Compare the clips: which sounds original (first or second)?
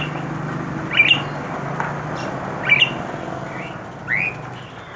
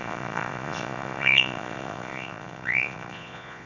first